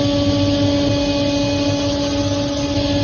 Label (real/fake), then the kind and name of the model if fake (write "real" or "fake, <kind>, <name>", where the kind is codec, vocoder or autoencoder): real